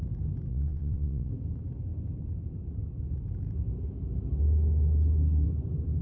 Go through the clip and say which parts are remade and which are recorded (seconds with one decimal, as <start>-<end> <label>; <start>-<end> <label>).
0.0-0.5 recorded; 0.5-1.3 remade; 1.3-6.0 recorded